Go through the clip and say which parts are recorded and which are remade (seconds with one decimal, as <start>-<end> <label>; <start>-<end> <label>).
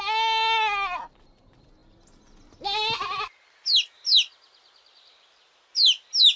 0.0-6.4 recorded